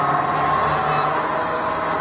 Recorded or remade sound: recorded